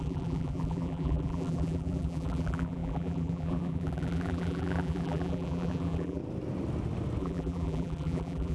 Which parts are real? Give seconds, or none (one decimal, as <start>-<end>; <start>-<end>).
6.2-7.2